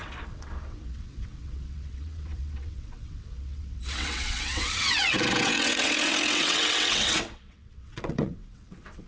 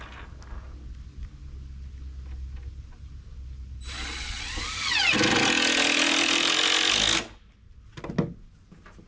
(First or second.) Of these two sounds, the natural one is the second